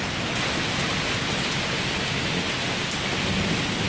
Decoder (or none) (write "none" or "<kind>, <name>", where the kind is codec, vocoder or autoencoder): none